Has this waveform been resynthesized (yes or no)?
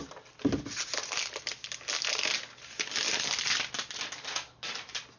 no